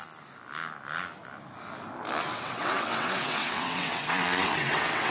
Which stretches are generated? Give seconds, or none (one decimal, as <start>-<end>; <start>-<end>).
2.3-5.1